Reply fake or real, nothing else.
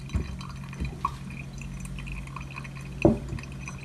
real